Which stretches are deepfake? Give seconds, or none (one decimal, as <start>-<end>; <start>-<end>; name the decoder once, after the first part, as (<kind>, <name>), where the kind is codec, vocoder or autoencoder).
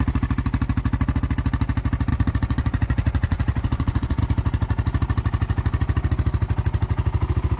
2.1-4.2 (vocoder, Vocos)